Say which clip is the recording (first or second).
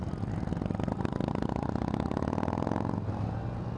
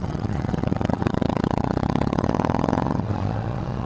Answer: first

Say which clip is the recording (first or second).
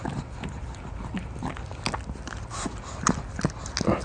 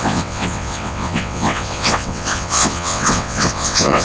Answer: first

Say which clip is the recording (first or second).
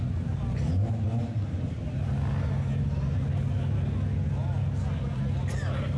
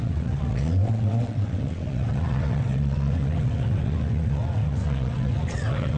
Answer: first